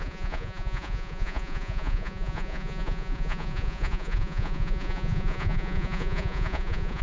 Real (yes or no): no